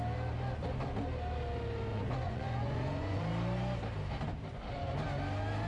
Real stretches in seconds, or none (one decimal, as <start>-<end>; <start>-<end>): 0.0-1.9; 3.2-5.7